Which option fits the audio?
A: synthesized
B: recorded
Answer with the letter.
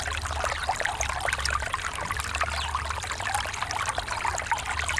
B